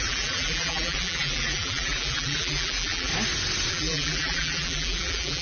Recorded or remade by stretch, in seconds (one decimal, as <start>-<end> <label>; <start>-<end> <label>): 0.0-3.1 remade; 3.1-3.7 recorded; 3.7-5.4 remade

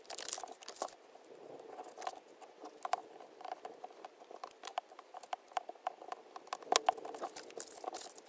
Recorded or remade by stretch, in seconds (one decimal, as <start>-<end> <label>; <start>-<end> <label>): 0.0-3.0 recorded; 3.0-4.2 remade; 4.2-4.7 recorded; 4.7-5.9 remade; 5.9-8.3 recorded

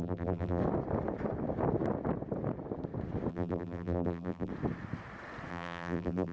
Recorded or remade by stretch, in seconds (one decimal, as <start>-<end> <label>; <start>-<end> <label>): 0.0-0.6 remade; 0.6-3.3 recorded; 3.3-4.5 remade; 4.5-5.5 recorded; 5.5-6.3 remade

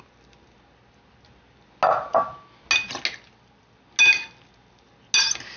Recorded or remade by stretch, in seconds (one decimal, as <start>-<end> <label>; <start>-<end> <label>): 0.0-5.6 recorded

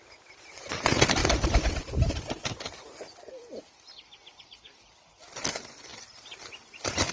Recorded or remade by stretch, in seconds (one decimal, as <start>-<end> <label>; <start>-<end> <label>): 0.0-7.1 recorded